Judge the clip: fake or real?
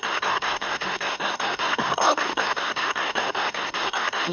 fake